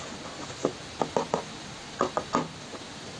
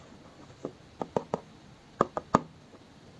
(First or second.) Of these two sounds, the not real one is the second